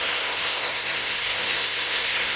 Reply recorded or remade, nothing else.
remade